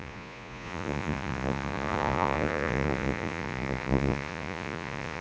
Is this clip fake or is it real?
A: fake